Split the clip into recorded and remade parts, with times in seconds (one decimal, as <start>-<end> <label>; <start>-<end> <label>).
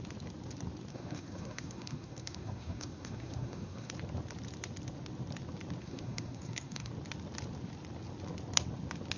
0.0-0.9 recorded; 0.9-3.9 remade; 3.9-5.8 recorded; 5.8-6.9 remade; 6.9-9.2 recorded